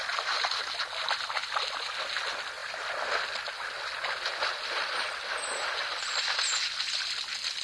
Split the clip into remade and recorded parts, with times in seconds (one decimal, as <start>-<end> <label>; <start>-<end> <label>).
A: 0.0-7.6 recorded